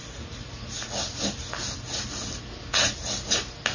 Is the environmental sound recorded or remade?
recorded